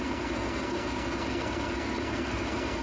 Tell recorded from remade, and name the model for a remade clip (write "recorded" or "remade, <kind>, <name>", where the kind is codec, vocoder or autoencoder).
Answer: remade, codec, SNAC